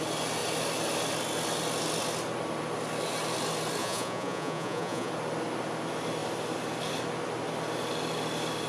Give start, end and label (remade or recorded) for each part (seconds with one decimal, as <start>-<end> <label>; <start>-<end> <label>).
0.0-3.8 recorded; 3.8-5.1 remade; 5.1-8.7 recorded